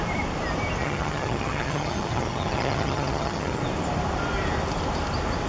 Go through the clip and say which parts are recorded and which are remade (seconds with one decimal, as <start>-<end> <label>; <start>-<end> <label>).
0.0-0.8 recorded; 0.8-3.6 remade; 3.6-5.5 recorded